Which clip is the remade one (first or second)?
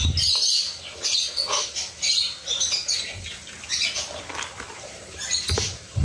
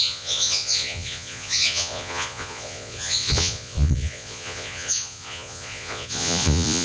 second